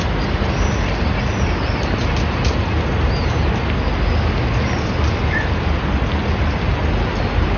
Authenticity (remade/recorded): recorded